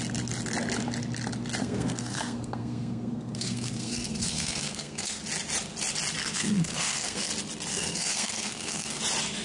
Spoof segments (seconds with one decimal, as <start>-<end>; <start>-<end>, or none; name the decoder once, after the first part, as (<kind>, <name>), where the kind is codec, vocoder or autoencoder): 1.6-5.2 (codec, SNAC); 6.2-7.3; 7.7-9.0